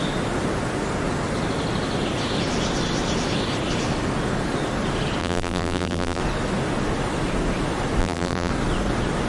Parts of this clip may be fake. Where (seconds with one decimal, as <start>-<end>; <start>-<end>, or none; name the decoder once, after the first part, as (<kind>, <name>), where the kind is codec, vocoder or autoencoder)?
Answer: 5.2-6.2 (vocoder, BigVGAN v2); 8.0-8.5